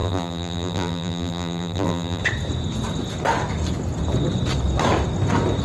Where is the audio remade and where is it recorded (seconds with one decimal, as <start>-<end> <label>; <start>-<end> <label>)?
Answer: 0.0-2.2 remade; 2.2-5.6 recorded